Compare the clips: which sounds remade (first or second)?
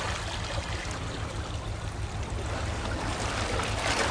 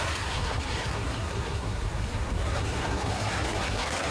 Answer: second